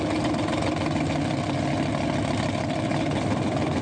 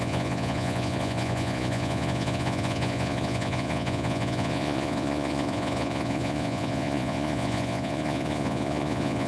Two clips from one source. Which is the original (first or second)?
first